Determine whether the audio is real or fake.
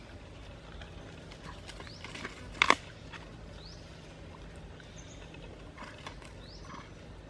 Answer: real